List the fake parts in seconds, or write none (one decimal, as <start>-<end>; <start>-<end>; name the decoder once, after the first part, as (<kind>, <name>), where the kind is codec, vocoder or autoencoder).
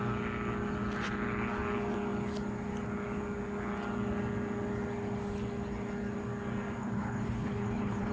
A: 6.8-8.1 (codec, HILCodec)